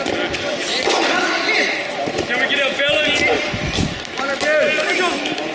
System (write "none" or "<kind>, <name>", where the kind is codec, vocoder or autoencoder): none